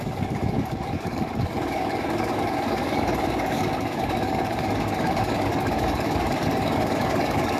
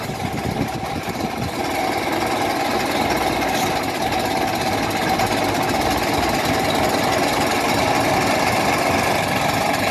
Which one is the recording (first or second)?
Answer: second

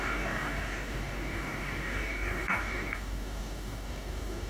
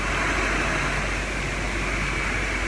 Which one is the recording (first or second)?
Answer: second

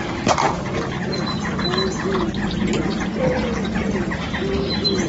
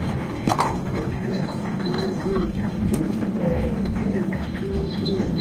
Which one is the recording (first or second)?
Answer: first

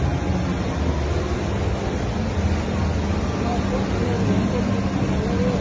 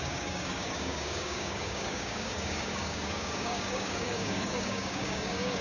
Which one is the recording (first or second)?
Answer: first